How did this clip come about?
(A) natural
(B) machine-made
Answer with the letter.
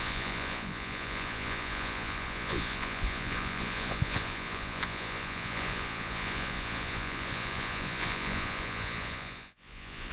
B